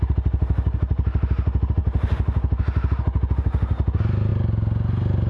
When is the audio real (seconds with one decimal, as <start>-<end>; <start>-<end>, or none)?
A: 0.0-5.3